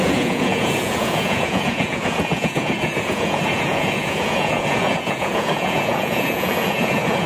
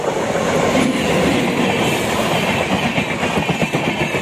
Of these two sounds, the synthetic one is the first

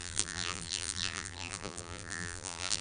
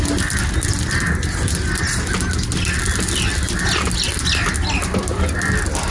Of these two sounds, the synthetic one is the first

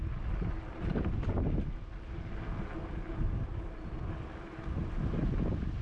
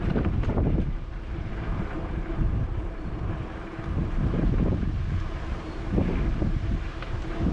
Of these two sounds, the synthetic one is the second